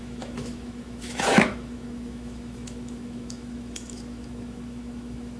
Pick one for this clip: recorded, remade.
remade